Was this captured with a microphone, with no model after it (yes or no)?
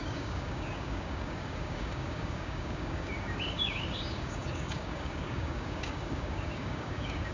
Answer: no